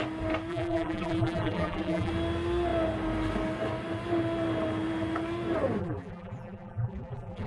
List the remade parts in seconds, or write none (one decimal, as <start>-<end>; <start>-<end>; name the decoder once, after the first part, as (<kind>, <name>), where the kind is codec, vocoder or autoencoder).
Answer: 0.5-2.1 (vocoder, BigVGAN v2); 5.8-7.5